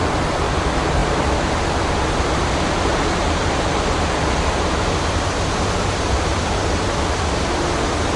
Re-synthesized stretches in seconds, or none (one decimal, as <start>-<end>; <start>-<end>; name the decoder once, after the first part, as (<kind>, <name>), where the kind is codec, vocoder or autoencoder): none